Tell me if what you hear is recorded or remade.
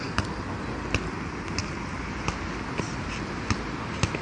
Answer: recorded